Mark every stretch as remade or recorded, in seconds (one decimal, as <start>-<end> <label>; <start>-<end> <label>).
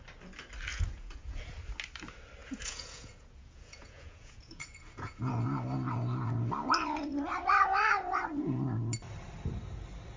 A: 0.0-0.7 recorded; 0.7-1.4 remade; 1.4-2.4 recorded; 2.4-5.3 remade; 5.3-10.2 recorded